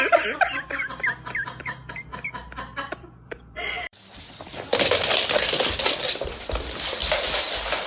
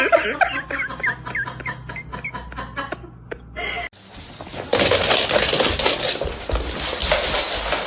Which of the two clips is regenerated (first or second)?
first